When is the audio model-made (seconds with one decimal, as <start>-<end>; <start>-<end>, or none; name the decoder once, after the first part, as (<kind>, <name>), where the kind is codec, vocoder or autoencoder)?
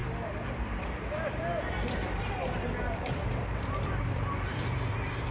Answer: 0.6-5.3 (vocoder, BigVGAN v2)